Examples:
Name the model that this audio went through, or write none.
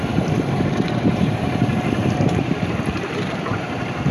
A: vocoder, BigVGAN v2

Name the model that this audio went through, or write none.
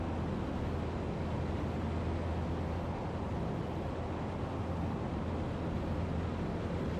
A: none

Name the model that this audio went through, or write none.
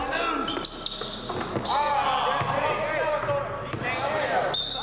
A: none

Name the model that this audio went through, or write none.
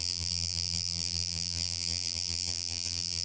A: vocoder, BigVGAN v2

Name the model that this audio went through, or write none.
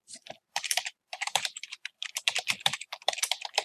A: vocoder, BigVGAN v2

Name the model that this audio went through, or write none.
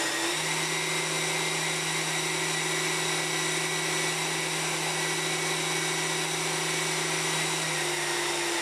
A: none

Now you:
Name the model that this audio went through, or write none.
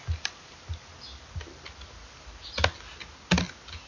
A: none